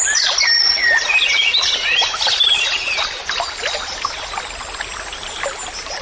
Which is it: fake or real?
real